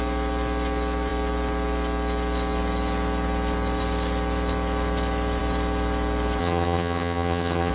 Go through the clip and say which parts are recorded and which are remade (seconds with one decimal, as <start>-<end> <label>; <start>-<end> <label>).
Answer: 0.0-6.4 recorded; 6.4-7.7 remade